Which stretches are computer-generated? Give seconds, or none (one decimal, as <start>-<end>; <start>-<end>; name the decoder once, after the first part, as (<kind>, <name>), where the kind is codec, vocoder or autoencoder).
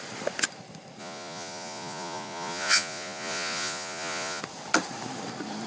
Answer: 1.0-4.4 (vocoder, Vocos)